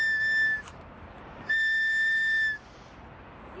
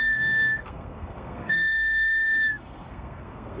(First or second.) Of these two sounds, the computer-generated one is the second